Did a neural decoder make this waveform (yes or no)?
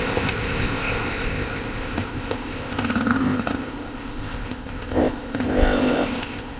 yes